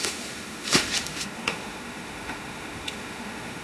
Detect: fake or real fake